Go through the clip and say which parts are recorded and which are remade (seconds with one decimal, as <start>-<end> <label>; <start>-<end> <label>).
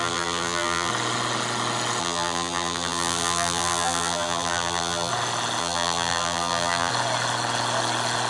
0.0-0.9 remade; 0.9-2.0 recorded; 2.0-5.1 remade; 5.1-5.6 recorded; 5.6-6.9 remade; 6.9-8.3 recorded